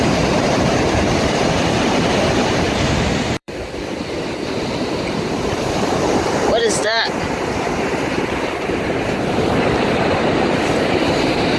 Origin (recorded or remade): remade